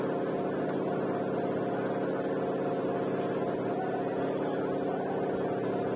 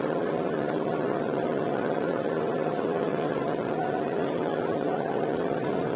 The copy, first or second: second